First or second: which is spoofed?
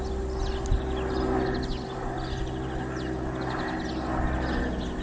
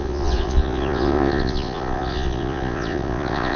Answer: second